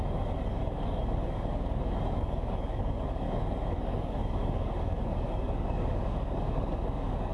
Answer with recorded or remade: remade